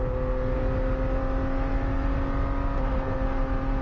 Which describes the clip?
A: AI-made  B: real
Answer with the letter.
B